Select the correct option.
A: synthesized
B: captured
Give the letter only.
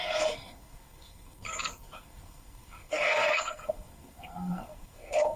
A